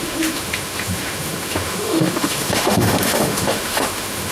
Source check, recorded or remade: remade